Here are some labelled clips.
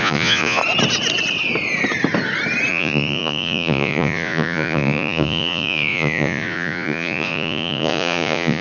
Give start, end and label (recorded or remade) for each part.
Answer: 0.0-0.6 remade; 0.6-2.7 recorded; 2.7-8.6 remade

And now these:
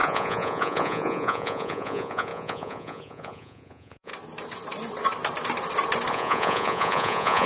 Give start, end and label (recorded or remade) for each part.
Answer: 0.0-4.1 remade; 4.1-6.1 recorded; 6.1-7.5 remade